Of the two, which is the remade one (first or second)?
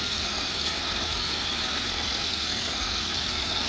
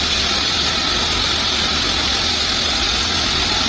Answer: first